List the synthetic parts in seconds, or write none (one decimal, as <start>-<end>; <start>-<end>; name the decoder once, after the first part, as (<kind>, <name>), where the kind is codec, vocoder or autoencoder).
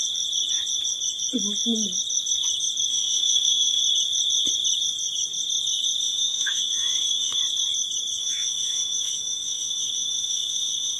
2.9-3.8 (autoencoder, DAC-VAE); 6.0-7.4; 8.2-11.0